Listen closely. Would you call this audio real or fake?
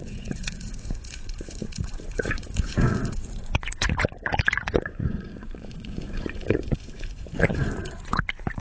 fake